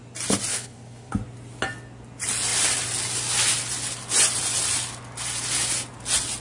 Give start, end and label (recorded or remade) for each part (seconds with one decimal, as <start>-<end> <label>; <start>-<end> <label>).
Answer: 0.0-0.5 recorded; 0.5-1.1 remade; 1.1-6.4 recorded